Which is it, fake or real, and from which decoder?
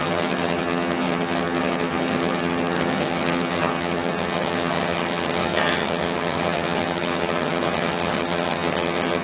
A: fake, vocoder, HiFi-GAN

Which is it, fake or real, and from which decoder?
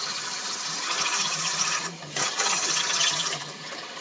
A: fake, vocoder, HiFi-GAN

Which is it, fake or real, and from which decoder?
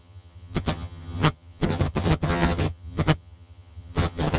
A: fake, vocoder, HiFi-GAN